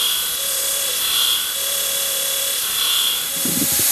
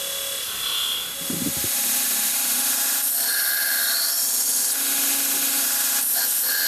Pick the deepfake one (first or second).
first